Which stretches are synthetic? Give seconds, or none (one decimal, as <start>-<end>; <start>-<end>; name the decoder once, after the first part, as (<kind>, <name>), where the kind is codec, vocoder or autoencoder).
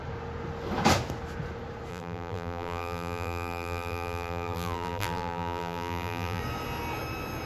1.9-6.4 (vocoder, BigVGAN v2)